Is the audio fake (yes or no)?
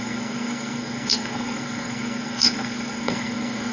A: yes